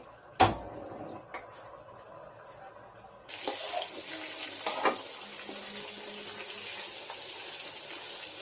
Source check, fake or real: real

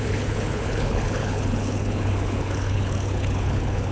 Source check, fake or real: fake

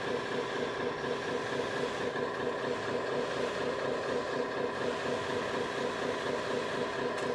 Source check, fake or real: real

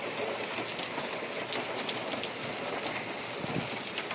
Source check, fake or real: real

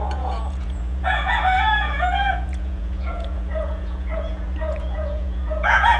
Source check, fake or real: fake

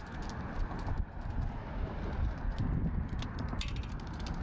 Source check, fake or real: real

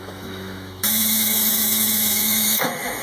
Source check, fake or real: fake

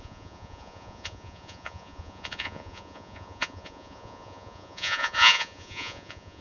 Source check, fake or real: fake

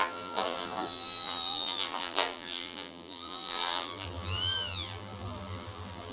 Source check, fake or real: fake